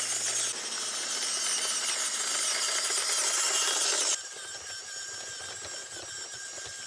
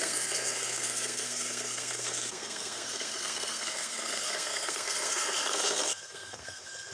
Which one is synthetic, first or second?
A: second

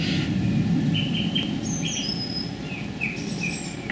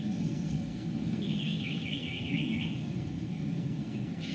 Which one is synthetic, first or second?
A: second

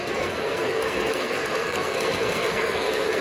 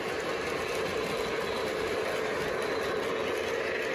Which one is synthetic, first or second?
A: first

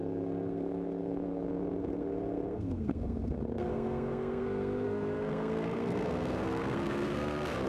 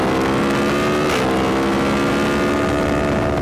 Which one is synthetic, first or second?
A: first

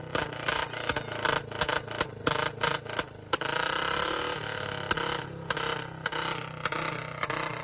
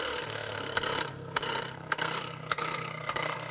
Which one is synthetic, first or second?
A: second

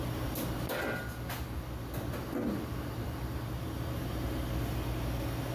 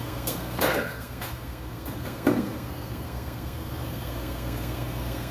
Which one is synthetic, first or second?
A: second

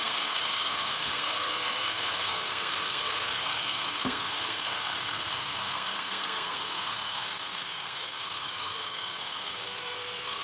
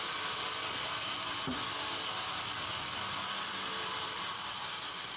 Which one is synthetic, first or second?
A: first